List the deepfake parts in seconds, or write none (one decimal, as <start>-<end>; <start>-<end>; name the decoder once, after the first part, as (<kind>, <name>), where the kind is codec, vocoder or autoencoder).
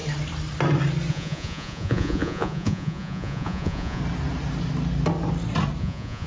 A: 1.1-4.0 (vocoder, Vocos); 5.8-6.3